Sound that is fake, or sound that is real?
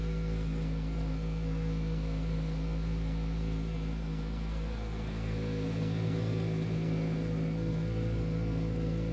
fake